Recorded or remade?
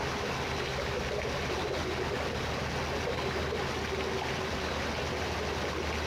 recorded